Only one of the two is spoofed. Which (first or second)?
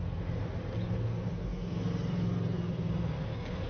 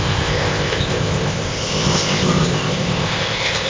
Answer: second